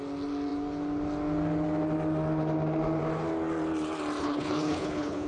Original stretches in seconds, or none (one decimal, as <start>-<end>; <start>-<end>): 0.0-4.2